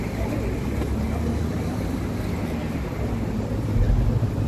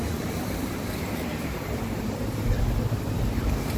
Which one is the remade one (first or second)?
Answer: second